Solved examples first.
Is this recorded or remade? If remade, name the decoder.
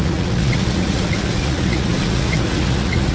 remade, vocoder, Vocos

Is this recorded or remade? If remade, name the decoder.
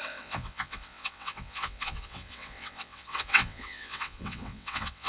remade, vocoder, WaveNeXt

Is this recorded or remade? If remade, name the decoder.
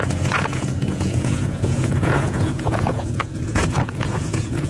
remade, vocoder, Vocos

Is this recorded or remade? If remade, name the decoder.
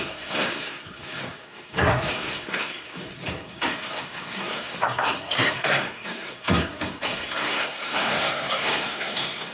remade, codec, SNAC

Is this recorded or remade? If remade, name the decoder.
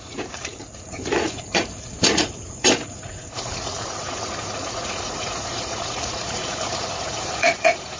remade, vocoder, Vocos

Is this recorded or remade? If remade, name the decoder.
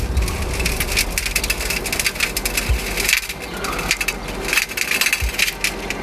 recorded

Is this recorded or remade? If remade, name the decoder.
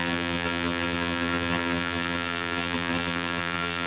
remade, vocoder, BigVGAN v2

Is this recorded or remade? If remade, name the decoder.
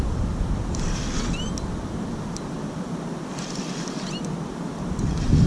recorded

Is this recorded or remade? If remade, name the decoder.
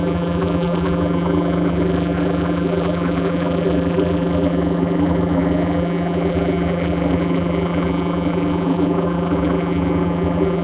remade, vocoder, BigVGAN v2